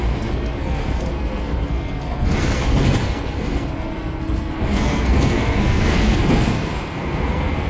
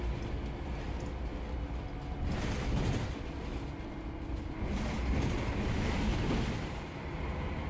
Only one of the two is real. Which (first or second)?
second